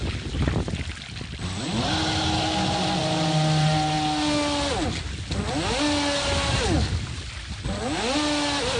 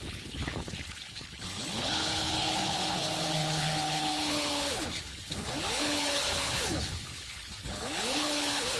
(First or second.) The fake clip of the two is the second